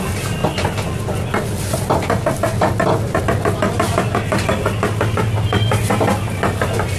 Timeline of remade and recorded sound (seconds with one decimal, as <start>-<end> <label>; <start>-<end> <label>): 0.0-7.0 recorded